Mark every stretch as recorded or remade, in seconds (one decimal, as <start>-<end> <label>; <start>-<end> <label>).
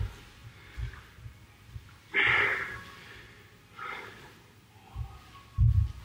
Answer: 0.0-6.0 recorded